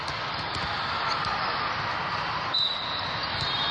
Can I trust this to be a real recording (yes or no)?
yes